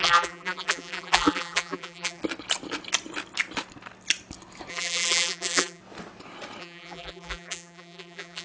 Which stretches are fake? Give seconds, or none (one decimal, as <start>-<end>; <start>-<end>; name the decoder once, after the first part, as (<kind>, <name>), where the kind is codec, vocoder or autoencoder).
0.0-2.2 (vocoder, BigVGAN v2); 4.7-5.8; 6.6-8.4